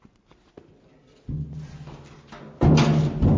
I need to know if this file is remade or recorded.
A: recorded